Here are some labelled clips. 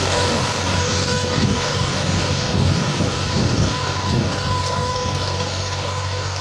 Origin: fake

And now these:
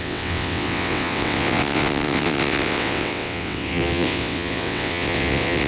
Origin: fake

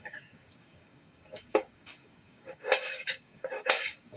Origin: fake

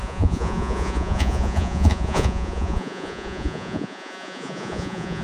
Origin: fake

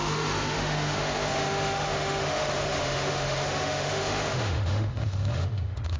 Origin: fake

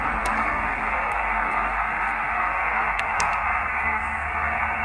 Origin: fake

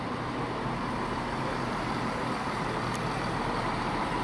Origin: fake